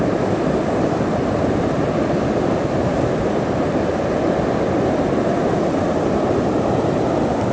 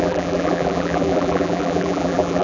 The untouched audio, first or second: first